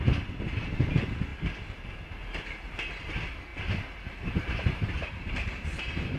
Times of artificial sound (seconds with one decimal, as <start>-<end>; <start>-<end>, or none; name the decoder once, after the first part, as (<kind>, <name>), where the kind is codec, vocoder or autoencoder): 3.5-6.2 (vocoder, BigVGAN v2)